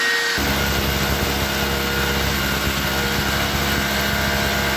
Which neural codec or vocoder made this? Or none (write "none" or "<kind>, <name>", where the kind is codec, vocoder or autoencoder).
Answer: none